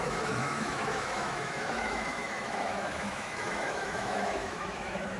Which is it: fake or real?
fake